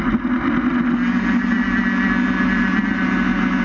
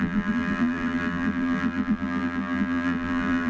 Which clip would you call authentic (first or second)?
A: first